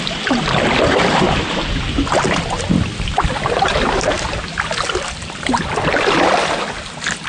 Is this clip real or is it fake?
real